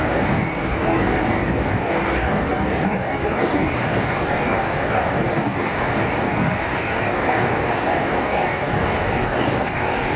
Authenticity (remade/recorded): remade